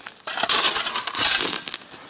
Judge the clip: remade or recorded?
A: recorded